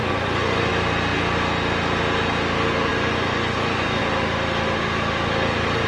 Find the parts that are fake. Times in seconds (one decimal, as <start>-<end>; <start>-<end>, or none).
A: 0.0-0.7; 2.9-4.0